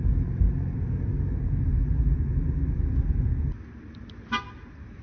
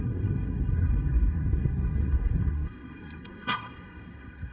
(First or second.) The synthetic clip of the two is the second